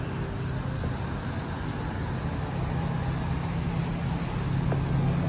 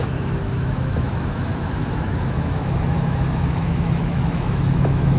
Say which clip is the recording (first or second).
first